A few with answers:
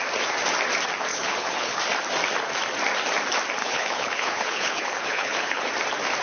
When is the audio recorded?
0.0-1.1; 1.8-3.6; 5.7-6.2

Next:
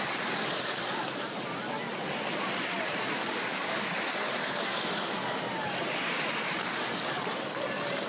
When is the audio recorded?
0.0-3.2; 3.9-4.4; 5.4-8.1

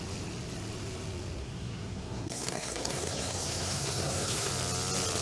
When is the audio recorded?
0.0-1.4; 4.5-5.2

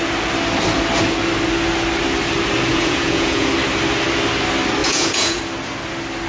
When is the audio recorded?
0.0-2.7; 3.5-4.8; 5.4-6.3

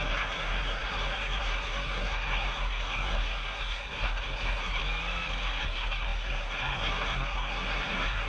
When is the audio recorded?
4.8-5.6